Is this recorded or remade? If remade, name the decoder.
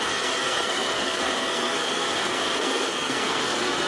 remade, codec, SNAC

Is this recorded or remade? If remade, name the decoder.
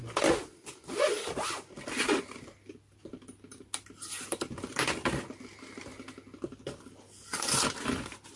recorded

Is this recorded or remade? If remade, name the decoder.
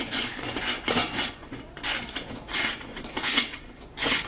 remade, vocoder, Vocos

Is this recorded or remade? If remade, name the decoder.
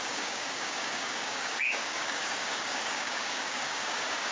remade, codec, DAC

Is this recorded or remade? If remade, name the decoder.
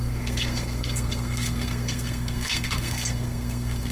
remade, codec, SNAC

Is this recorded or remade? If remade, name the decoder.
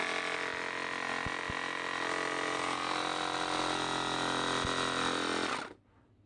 recorded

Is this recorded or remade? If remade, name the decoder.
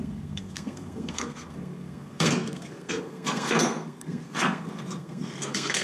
remade, codec, SNAC